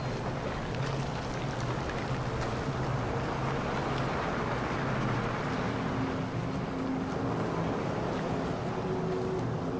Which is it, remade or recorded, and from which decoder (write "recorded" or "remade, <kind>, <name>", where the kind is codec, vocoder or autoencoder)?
recorded